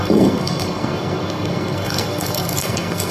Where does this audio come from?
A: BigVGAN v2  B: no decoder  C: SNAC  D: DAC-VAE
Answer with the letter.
C